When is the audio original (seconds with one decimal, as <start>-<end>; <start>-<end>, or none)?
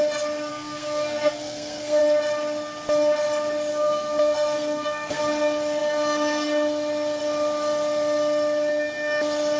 0.0-0.5; 2.0-3.7; 5.2-9.6